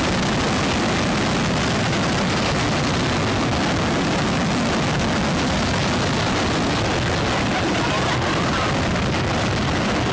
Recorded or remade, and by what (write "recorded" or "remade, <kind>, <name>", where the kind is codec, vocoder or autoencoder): recorded